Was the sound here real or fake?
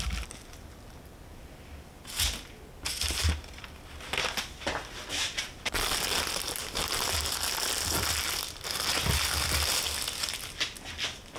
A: real